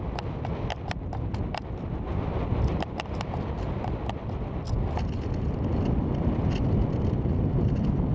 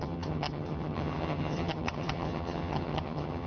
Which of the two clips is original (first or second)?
first